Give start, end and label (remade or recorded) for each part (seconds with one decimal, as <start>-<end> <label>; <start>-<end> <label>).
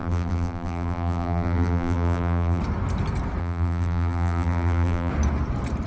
0.0-2.6 remade; 2.6-3.4 recorded; 3.4-5.1 remade; 5.1-5.9 recorded